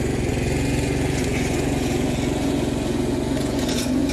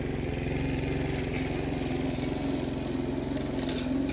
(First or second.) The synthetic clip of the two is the first